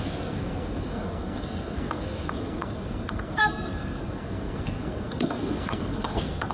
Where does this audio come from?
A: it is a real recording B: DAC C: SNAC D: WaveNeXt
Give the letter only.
C